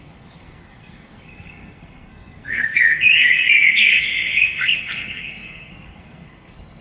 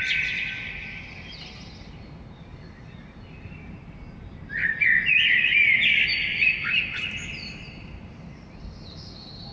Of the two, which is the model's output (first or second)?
first